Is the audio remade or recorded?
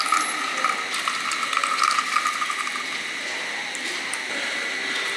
recorded